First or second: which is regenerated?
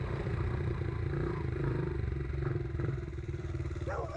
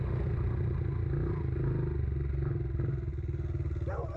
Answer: first